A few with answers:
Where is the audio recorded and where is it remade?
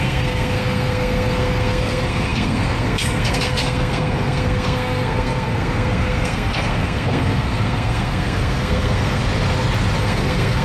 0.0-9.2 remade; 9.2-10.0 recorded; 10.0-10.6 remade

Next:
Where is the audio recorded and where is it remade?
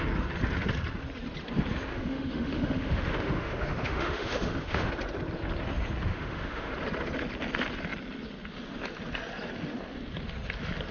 0.0-1.9 recorded; 1.9-4.9 remade; 4.9-6.1 recorded; 6.1-6.7 remade; 6.7-10.9 recorded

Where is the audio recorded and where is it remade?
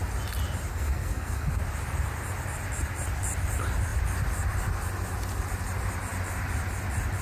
0.0-0.7 recorded; 0.7-1.6 remade; 1.6-7.2 recorded